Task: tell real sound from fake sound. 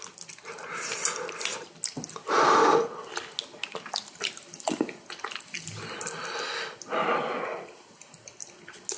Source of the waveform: real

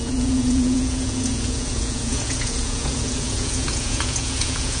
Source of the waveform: fake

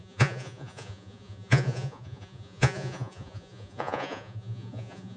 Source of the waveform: fake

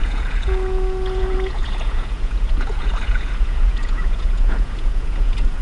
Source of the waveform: fake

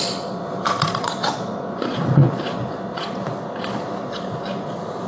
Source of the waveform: fake